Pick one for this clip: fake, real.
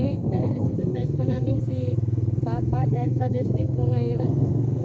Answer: fake